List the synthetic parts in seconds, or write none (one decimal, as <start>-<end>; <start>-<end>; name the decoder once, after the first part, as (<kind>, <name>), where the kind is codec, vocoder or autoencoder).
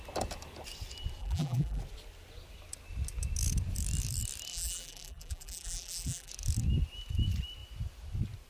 1.2-1.8 (vocoder, BigVGAN v2); 4.5-6.3